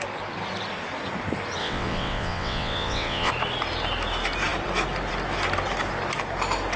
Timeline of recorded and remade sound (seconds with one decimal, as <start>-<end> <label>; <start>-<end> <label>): 0.0-1.6 recorded; 1.6-3.3 remade; 3.3-6.8 recorded